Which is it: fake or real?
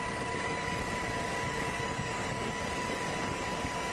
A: fake